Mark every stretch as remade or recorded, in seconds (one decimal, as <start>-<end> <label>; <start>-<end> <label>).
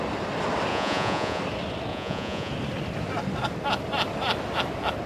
0.0-0.7 recorded; 0.7-1.4 remade; 1.4-1.9 recorded; 1.9-2.5 remade; 2.5-5.1 recorded